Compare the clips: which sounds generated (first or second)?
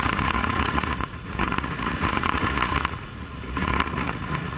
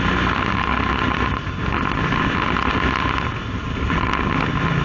first